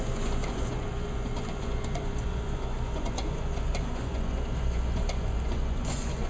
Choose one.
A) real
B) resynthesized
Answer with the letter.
B